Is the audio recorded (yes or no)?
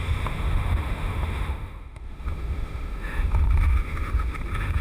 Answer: no